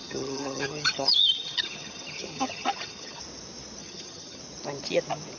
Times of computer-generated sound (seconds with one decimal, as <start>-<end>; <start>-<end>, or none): 0.0-3.2; 3.8-4.4